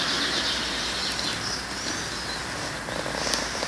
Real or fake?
real